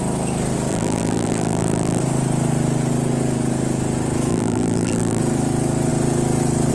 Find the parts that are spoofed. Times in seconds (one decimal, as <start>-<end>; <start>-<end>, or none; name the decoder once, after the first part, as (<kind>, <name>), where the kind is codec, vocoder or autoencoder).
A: 0.7-2.0 (vocoder, BigVGAN v2); 4.3-5.2